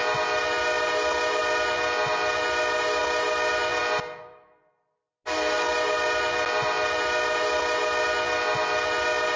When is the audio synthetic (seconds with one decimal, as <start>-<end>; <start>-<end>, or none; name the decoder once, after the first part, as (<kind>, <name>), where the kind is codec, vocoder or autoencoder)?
none